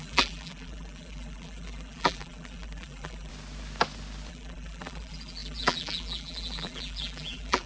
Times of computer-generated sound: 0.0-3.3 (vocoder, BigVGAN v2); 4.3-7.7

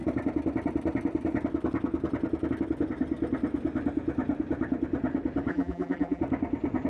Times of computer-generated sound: 5.5-6.2 (vocoder, BigVGAN v2)

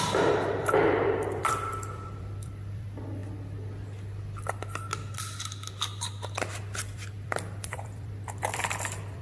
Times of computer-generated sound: 0.0-3.2 (vocoder, BigVGAN v2); 6.6-9.2

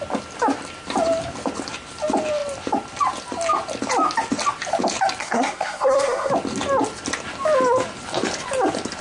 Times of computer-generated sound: 5.2-6.3 (codec, SNAC)

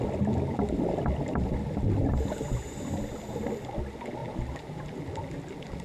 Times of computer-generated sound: none

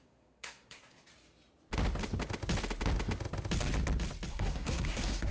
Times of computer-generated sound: 0.0-1.1 (codec, SNAC); 4.3-5.3

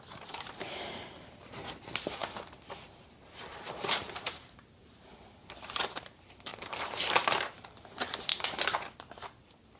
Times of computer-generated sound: 0.0-8.3 (vocoder, BigVGAN v2)